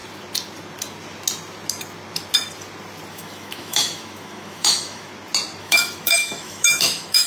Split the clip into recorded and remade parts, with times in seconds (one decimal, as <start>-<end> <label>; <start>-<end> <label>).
0.0-3.1 recorded; 3.1-5.1 remade; 5.1-5.6 recorded; 5.6-7.3 remade